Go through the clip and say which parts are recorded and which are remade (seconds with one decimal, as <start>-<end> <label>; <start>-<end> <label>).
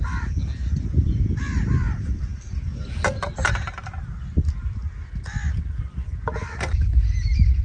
0.0-7.6 recorded